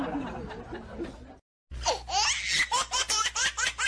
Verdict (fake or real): real